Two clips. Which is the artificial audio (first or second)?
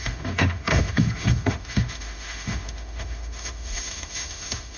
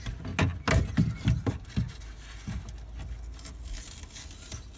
first